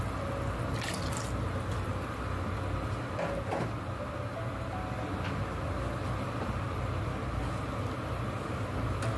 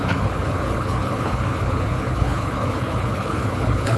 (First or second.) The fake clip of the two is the second